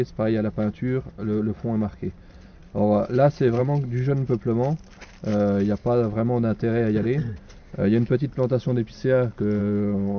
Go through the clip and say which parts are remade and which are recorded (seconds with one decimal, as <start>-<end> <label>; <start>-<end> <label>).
0.0-10.2 recorded